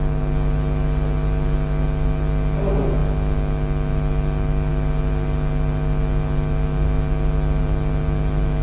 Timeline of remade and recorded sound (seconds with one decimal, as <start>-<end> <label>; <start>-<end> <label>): 0.0-8.6 recorded